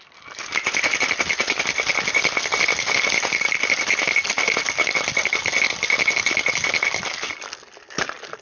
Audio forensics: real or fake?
real